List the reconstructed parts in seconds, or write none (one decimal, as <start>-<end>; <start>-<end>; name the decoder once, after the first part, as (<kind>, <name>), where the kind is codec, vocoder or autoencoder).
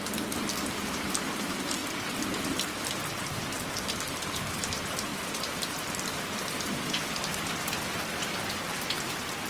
none